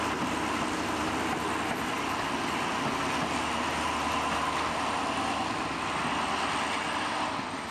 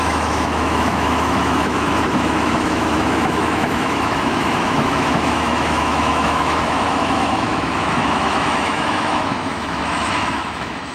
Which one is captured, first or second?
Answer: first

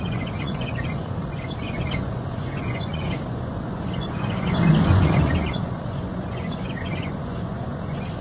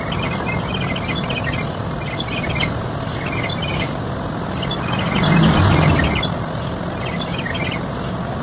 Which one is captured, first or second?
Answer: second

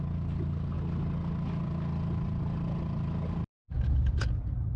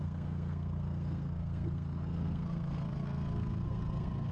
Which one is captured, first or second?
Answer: first